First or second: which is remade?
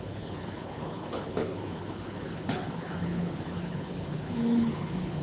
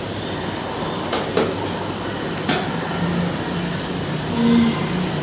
first